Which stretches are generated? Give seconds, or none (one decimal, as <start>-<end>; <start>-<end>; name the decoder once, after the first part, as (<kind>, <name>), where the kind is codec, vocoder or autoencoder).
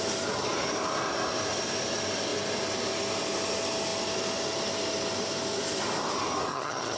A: 6.5-7.0 (vocoder, HiFi-GAN)